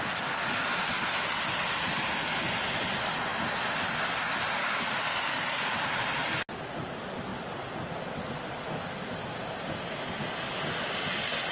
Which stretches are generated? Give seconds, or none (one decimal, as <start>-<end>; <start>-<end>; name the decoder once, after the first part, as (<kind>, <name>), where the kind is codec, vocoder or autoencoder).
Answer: 4.6-5.6 (codec, DAC)